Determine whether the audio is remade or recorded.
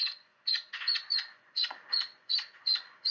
remade